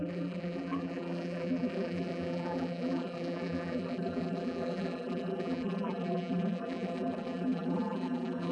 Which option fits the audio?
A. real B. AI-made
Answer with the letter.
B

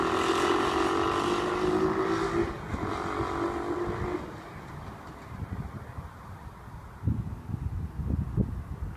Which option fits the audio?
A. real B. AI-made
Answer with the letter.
A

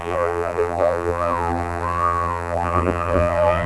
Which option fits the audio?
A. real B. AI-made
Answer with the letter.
B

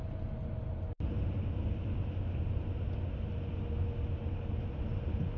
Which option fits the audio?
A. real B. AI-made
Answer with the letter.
A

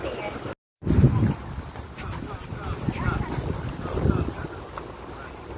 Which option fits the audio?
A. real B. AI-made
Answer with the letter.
A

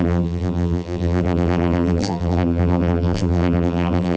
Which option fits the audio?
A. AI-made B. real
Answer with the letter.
A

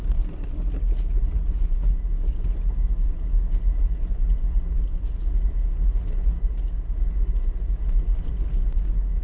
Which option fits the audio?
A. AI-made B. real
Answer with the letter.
B